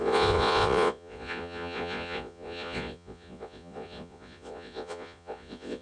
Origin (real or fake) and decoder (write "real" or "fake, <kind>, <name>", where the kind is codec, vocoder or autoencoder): fake, vocoder, Vocos